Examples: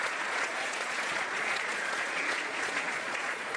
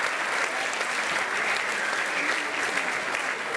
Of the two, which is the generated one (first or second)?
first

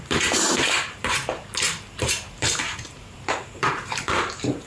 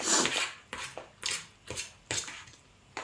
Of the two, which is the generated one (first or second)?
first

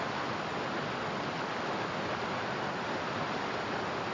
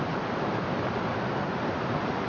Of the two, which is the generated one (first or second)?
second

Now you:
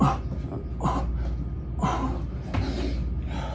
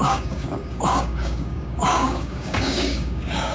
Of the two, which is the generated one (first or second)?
second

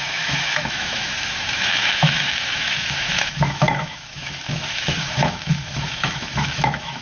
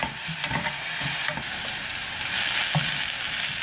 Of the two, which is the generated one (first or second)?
first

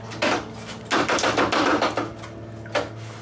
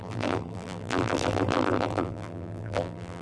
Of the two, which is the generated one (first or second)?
second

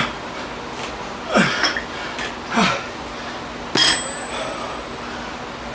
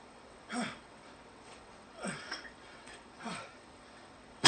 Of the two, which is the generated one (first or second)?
second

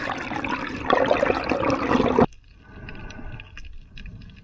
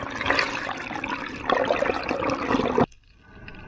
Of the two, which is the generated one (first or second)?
first